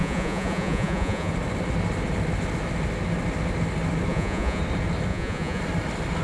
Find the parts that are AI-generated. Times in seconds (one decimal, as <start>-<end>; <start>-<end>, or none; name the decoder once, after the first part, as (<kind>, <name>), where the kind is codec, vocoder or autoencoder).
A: 0.0-1.3 (vocoder, Vocos); 4.1-4.6; 5.1-5.6